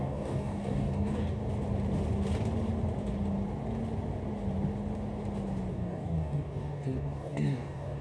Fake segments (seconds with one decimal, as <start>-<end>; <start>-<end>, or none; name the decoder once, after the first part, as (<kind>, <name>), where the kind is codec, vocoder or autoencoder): 0.0-1.4 (codec, DAC); 5.7-8.0